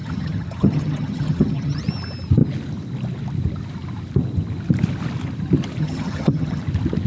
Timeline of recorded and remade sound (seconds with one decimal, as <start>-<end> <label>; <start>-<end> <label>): 0.0-1.8 remade; 1.8-5.8 recorded; 5.8-6.6 remade; 6.6-7.1 recorded